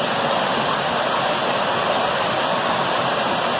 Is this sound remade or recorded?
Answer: recorded